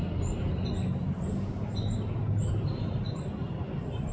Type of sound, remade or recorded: recorded